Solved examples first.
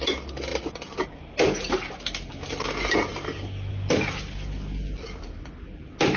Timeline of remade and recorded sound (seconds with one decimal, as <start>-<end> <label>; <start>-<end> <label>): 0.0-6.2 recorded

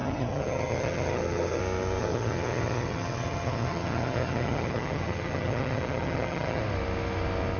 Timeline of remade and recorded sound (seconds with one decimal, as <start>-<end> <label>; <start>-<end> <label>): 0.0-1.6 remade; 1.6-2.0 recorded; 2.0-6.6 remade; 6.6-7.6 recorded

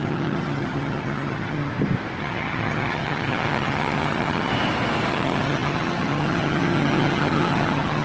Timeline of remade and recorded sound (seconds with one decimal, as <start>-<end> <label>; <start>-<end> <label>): 0.0-1.7 remade; 1.7-2.2 recorded; 2.2-4.5 remade; 4.5-5.1 recorded; 5.1-8.0 remade

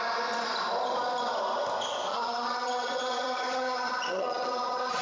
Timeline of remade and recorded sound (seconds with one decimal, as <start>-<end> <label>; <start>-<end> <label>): 0.0-2.1 recorded; 2.1-5.0 remade

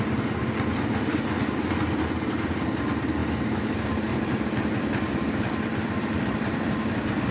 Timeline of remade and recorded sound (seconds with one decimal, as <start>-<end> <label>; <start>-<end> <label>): 0.0-7.3 recorded